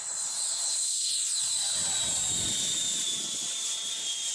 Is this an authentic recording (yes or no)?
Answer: yes